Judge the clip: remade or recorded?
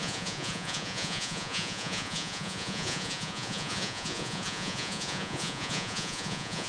remade